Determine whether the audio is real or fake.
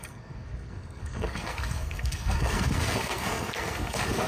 fake